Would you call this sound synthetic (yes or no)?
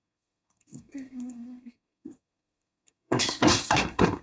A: yes